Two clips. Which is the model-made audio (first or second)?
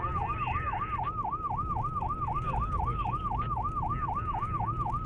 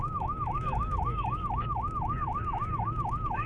second